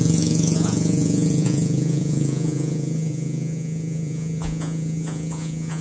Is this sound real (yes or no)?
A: no